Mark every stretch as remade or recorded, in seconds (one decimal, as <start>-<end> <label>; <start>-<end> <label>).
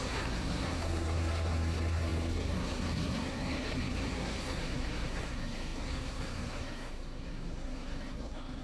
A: 0.0-8.6 remade